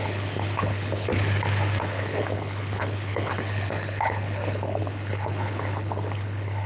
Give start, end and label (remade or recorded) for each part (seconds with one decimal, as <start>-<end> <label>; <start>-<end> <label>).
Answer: 0.0-1.1 remade; 1.1-1.8 recorded; 1.8-6.7 remade